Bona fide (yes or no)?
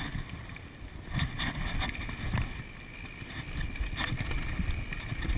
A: yes